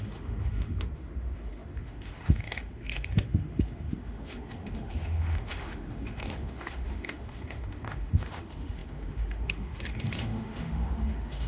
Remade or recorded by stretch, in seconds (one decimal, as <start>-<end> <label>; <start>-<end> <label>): 0.0-11.5 remade